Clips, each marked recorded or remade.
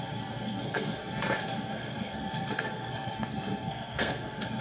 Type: remade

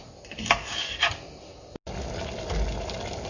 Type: recorded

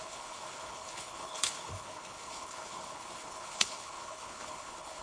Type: remade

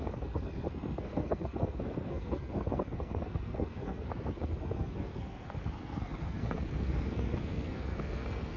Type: remade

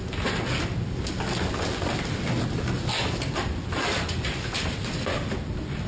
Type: recorded